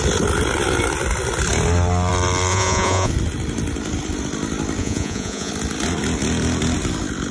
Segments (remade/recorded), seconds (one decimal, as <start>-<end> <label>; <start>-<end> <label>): 0.0-2.5 recorded; 2.5-3.1 remade; 3.1-4.8 recorded; 4.8-5.5 remade; 5.5-7.3 recorded